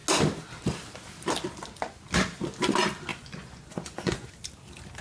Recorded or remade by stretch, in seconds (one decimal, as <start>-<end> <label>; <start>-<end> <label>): 0.0-3.1 recorded; 3.1-4.3 remade; 4.3-5.0 recorded